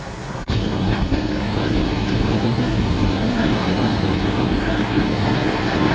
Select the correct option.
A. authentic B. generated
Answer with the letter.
B